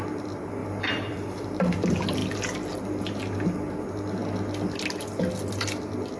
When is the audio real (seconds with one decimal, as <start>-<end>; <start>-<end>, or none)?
0.0-0.6; 1.7-6.2